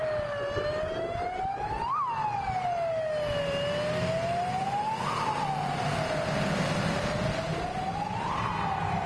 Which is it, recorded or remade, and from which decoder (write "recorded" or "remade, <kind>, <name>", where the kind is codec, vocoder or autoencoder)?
recorded